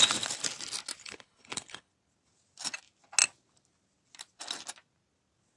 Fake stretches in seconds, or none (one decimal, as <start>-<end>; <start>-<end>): 1.0-1.9